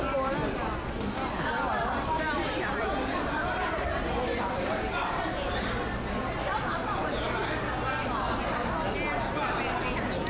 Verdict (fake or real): real